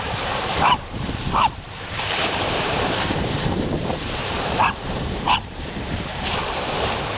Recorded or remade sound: remade